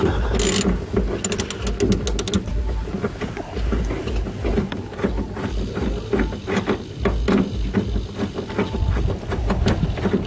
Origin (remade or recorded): recorded